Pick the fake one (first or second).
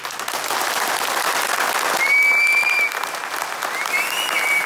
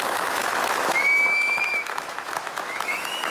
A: second